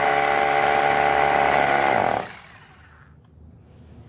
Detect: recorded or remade recorded